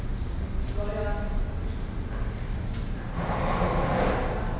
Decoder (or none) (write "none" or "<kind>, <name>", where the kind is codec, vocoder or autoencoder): none